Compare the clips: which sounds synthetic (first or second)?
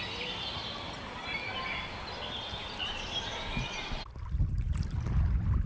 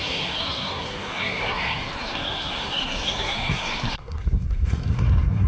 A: second